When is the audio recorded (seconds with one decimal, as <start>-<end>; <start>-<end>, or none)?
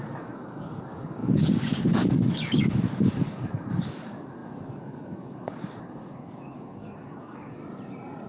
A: 7.6-8.3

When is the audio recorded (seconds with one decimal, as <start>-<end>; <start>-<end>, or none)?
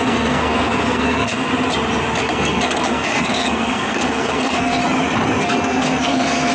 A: 1.5-2.2; 4.8-5.4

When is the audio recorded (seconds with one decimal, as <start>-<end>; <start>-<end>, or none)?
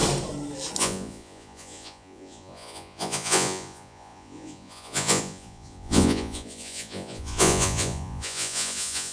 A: 0.0-0.8